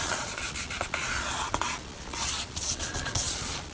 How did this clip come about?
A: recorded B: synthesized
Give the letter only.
B